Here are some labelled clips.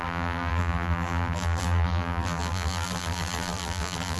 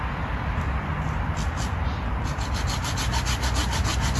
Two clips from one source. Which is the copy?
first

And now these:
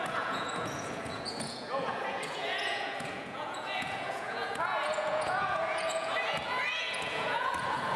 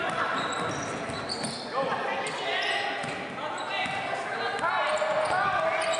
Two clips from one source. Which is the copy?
first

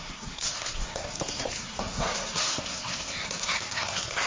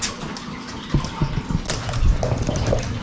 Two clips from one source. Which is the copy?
first